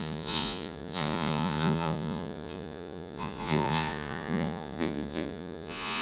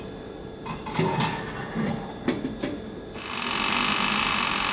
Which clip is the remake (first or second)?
first